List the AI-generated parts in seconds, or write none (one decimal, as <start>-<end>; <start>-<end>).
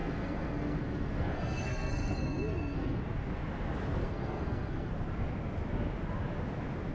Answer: 0.0-3.0; 4.0-4.9